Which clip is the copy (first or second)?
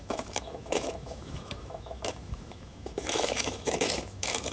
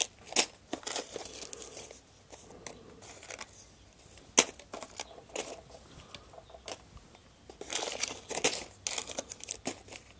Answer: first